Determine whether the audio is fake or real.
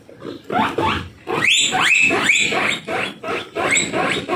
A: real